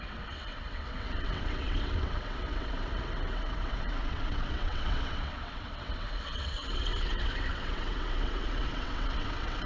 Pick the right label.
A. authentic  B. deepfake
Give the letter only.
B